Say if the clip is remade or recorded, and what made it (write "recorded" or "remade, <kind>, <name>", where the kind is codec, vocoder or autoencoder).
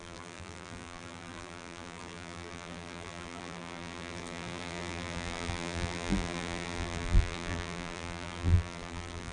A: remade, vocoder, BigVGAN v2